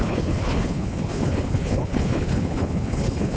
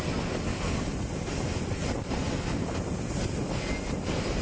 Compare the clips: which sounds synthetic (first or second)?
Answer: first